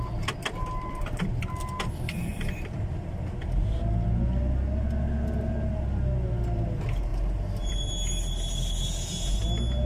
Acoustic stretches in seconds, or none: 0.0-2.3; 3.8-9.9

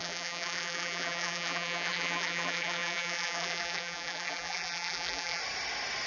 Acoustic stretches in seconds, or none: 5.4-6.1

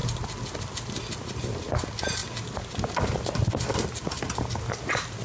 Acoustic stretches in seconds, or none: 0.0-5.2

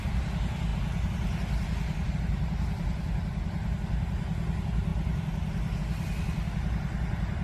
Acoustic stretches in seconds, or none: 0.0-7.4